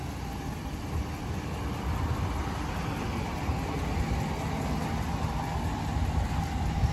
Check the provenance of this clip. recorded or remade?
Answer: recorded